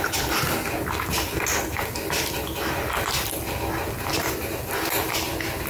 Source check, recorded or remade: recorded